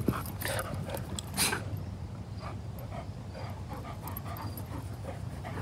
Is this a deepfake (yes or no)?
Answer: no